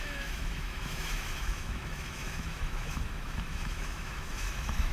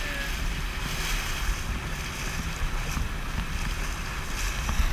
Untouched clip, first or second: second